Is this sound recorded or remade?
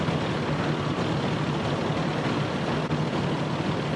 recorded